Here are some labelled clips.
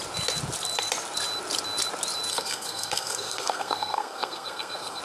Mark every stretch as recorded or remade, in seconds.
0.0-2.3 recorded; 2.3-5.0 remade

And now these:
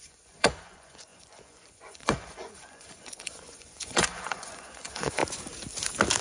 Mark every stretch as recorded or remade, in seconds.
0.0-5.2 remade; 5.2-6.2 recorded

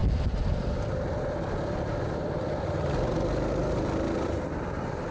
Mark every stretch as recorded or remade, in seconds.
0.0-5.1 recorded

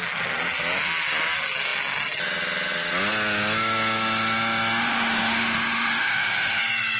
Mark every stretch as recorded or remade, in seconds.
0.0-4.8 recorded; 4.8-6.6 remade; 6.6-7.0 recorded

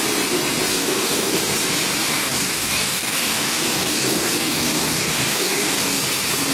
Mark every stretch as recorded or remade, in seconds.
0.0-0.7 recorded; 0.7-1.4 remade; 1.4-2.1 recorded; 2.1-6.0 remade; 6.0-6.5 recorded

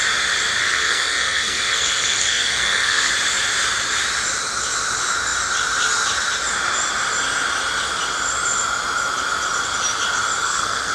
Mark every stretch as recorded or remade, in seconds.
0.0-0.6 recorded; 0.6-3.1 remade; 3.1-10.4 recorded; 10.4-10.9 remade

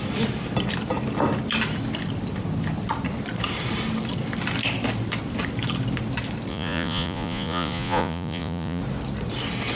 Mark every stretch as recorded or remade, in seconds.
0.0-6.5 recorded; 6.5-8.8 remade; 8.8-9.8 recorded